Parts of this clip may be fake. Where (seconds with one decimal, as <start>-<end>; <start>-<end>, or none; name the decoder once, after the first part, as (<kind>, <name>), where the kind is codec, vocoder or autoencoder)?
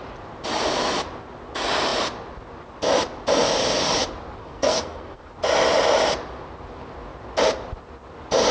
4.4-5.3 (codec, SNAC)